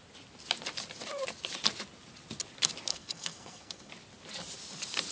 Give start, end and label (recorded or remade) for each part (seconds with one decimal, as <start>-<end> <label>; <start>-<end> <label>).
0.0-2.9 recorded; 2.9-3.9 remade; 3.9-5.1 recorded